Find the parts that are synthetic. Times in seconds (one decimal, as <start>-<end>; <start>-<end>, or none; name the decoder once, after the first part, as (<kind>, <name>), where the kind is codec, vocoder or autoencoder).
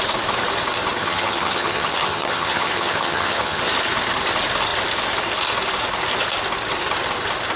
1.0-3.6 (vocoder, HiFi-GAN)